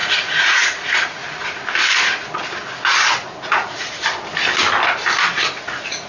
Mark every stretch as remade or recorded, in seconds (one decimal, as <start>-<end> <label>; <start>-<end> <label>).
0.0-1.2 remade; 1.2-3.1 recorded; 3.1-4.0 remade; 4.0-5.2 recorded; 5.2-6.1 remade